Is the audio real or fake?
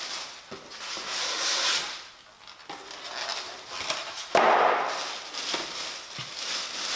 real